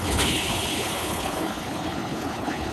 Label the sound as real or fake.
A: fake